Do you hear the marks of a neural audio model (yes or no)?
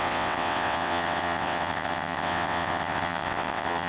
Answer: yes